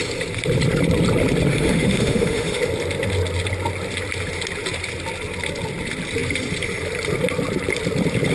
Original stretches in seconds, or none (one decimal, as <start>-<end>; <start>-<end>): 0.0-1.5; 2.6-8.3